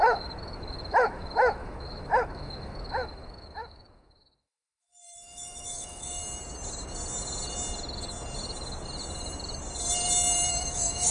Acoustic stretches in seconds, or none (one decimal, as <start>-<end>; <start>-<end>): 6.2-10.5